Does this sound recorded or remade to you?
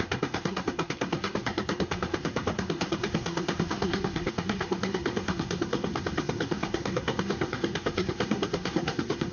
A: remade